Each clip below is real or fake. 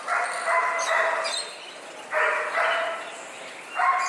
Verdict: real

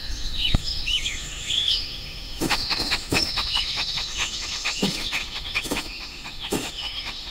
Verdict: fake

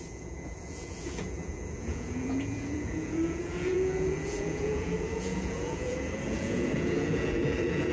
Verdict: fake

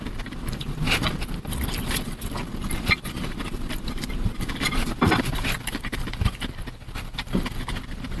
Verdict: fake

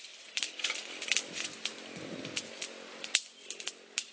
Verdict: real